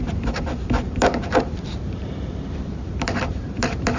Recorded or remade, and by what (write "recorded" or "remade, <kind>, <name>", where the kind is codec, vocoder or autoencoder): remade, vocoder, BigVGAN v2